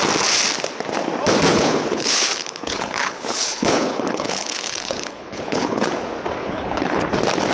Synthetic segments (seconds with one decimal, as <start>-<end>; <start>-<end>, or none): 1.5-5.9; 6.4-7.0